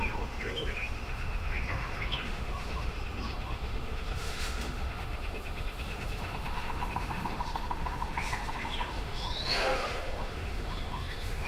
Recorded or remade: remade